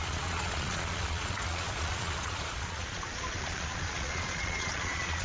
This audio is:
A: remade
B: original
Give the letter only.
A